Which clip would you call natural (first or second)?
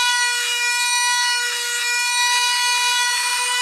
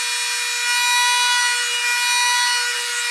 second